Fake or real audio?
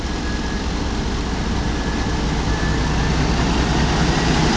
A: real